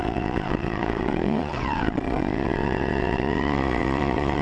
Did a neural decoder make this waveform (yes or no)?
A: yes